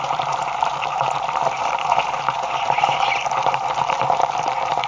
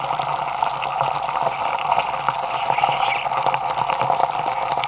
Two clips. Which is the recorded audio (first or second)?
second